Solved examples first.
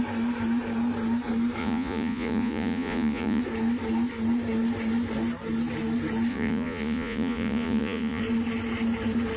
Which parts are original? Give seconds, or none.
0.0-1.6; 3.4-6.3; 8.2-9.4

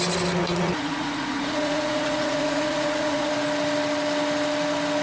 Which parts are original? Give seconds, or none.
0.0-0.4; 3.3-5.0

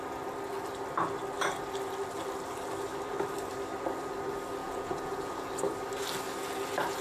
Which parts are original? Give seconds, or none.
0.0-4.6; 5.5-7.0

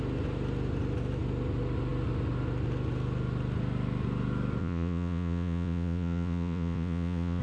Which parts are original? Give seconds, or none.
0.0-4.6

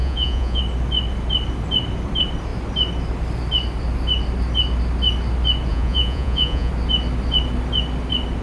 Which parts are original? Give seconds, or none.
0.6-5.7; 6.7-8.4

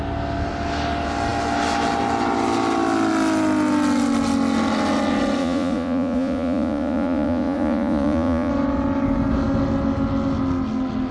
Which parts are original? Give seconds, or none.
0.0-5.4; 8.5-11.1